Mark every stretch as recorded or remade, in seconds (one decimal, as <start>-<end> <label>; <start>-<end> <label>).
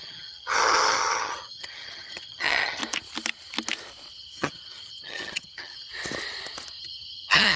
0.0-2.8 remade; 2.8-4.1 recorded; 4.1-5.9 remade; 5.9-6.8 recorded; 6.8-7.6 remade